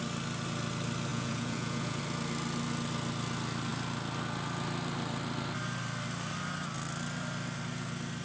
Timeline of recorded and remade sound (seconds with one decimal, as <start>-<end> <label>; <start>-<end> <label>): 0.0-1.1 recorded; 1.1-2.0 remade; 2.0-8.2 recorded